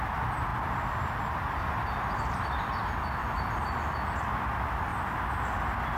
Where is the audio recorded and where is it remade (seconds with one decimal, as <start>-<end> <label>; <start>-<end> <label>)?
0.0-3.2 recorded; 3.2-3.8 remade; 3.8-4.9 recorded; 4.9-5.5 remade; 5.5-6.0 recorded